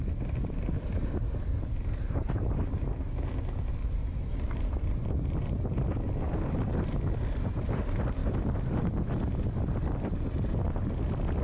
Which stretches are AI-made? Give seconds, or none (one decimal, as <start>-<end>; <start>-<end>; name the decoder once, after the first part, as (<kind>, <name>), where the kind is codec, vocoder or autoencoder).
0.9-2.6 (vocoder, BigVGAN v2); 4.0-5.1